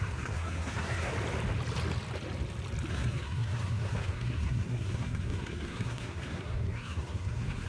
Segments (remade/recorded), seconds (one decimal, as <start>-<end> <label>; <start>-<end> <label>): 0.0-1.1 remade; 1.1-2.9 recorded; 2.9-7.7 remade